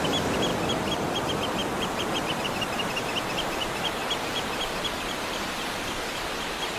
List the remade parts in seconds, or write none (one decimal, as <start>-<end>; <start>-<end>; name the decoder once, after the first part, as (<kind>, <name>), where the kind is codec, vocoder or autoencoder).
1.6-2.6 (vocoder, BigVGAN v2)